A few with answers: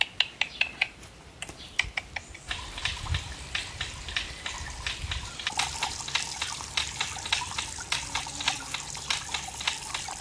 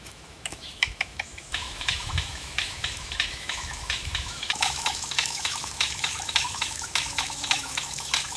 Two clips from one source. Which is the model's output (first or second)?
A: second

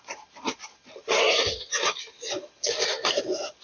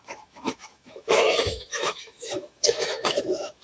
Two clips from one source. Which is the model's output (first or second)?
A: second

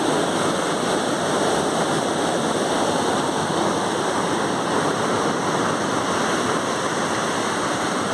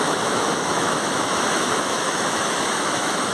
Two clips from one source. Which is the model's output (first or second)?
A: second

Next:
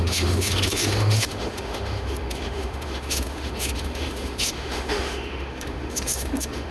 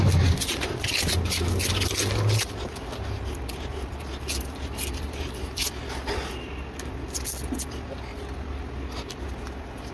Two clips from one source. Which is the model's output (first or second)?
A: first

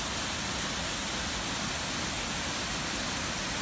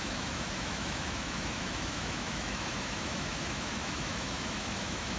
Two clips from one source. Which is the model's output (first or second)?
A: second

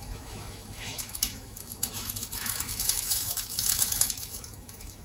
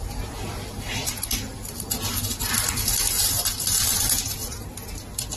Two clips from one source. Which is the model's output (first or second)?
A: first